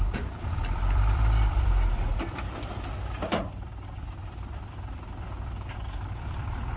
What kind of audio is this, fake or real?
fake